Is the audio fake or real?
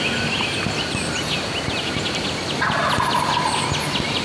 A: real